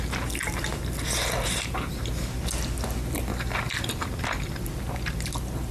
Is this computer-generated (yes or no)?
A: no